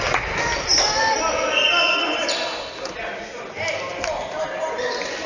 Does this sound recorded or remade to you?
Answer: recorded